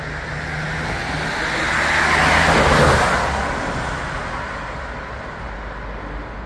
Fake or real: real